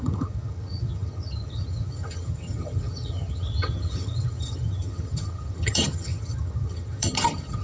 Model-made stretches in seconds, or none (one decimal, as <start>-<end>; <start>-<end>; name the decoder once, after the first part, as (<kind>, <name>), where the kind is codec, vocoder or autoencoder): 0.0-7.6 (vocoder, HiFi-GAN)